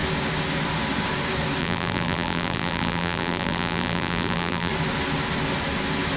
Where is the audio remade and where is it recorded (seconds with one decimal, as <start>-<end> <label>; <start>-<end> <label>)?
0.0-1.6 recorded; 1.6-4.7 remade; 4.7-6.2 recorded